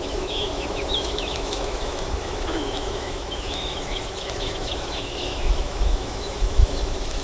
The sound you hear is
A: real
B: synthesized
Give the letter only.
B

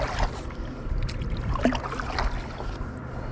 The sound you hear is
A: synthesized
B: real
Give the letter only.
B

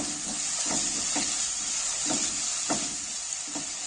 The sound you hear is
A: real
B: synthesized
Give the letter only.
A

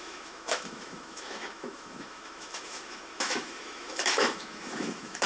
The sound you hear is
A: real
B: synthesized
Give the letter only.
B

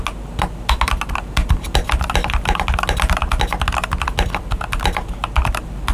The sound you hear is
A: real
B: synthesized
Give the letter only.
A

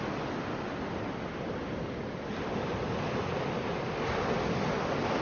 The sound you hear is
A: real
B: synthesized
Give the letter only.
A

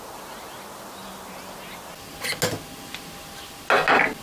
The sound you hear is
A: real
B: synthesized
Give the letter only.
A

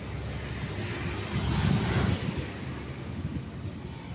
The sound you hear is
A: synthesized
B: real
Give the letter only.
B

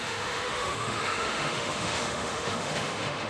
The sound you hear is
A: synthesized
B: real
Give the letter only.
A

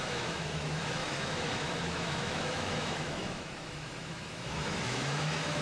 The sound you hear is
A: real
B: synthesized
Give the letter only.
B